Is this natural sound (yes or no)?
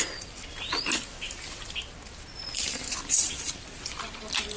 yes